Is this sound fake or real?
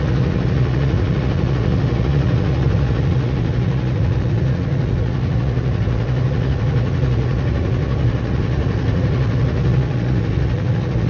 fake